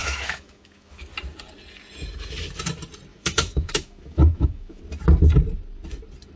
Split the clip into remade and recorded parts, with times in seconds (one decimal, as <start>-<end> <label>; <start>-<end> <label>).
0.0-1.0 remade; 1.0-3.1 recorded; 3.1-4.8 remade; 4.8-6.4 recorded